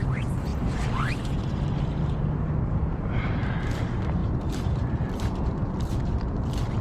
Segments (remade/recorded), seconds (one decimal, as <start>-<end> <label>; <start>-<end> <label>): 0.0-4.2 recorded; 4.2-5.0 remade; 5.0-6.8 recorded